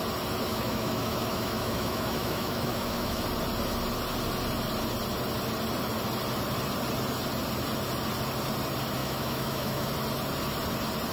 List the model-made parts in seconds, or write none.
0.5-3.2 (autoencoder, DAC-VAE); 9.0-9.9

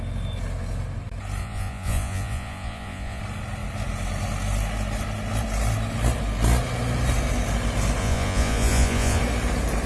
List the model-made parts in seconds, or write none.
1.4-3.2 (vocoder, Vocos); 8.0-9.2

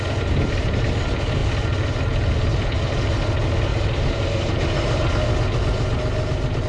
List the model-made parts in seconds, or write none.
3.7-5.1 (vocoder, BigVGAN v2)

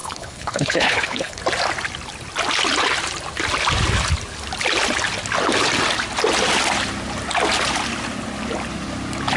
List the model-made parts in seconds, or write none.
0.0-1.4 (codec, HILCodec)

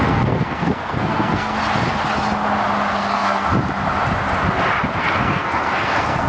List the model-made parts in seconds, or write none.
0.0-1.6 (codec, SNAC); 2.9-3.5; 5.0-6.3

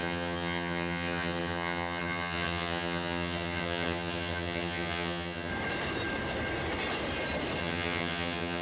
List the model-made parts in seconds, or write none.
0.0-5.5 (vocoder, HiFi-GAN); 7.6-8.6

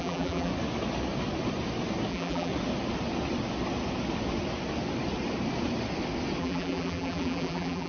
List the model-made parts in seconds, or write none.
0.0-0.5 (vocoder, BigVGAN v2); 2.1-2.5; 6.4-7.9